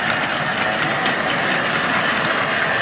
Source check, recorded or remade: recorded